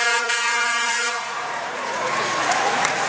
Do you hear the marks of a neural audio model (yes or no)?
yes